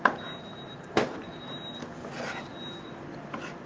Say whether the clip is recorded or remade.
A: recorded